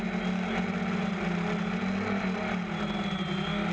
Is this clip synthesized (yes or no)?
no